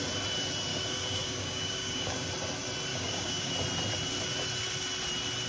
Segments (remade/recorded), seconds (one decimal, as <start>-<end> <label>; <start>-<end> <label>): 0.0-0.7 recorded; 0.7-2.1 remade; 2.1-2.9 recorded; 2.9-3.5 remade; 3.5-5.5 recorded